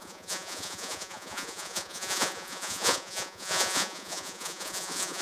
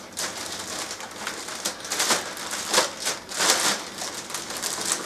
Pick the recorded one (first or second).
second